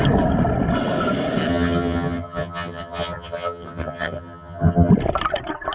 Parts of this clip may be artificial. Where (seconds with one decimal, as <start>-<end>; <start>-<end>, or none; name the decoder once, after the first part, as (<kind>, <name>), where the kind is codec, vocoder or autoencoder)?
1.5-4.9 (vocoder, HiFi-GAN)